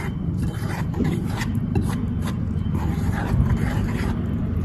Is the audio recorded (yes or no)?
no